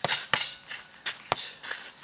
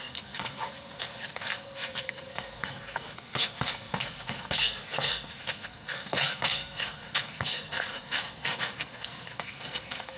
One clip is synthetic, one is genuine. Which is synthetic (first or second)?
second